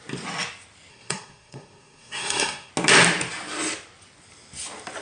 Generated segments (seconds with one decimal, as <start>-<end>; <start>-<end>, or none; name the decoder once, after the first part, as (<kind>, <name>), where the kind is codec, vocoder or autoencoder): 0.9-2.7 (codec, SNAC)